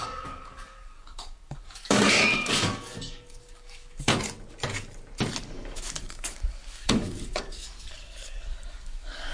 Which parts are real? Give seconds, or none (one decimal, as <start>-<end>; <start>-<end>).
4.1-5.4